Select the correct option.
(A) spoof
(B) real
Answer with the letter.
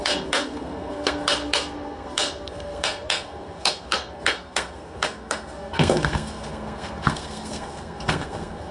A